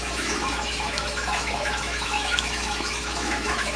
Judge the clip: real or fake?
fake